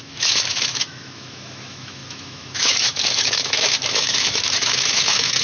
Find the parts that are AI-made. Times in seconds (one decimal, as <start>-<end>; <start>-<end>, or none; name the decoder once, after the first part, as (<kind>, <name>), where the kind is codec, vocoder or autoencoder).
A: 0.0-5.4 (autoencoder, DAC-VAE)